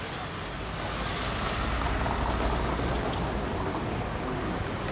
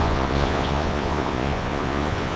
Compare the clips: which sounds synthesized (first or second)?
second